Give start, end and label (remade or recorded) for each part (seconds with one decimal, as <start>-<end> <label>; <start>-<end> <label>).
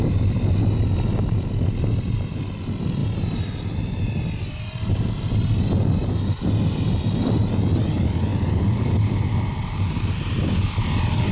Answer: 0.0-11.3 recorded